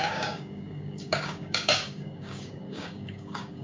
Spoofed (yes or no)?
yes